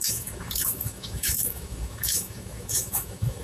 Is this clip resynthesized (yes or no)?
yes